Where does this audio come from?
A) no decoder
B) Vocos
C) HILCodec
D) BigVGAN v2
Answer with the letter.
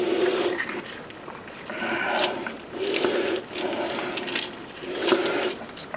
A